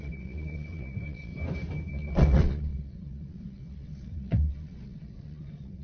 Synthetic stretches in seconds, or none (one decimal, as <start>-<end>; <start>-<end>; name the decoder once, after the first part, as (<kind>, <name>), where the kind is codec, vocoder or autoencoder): 0.0-1.3 (vocoder, WaveNeXt); 1.9-5.8